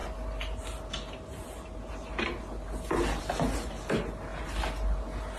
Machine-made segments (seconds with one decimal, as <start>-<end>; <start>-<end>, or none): none